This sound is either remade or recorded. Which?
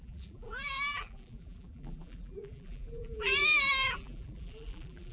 remade